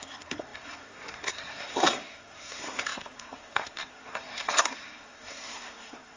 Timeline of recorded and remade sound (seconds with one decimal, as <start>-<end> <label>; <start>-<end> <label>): 0.0-6.2 remade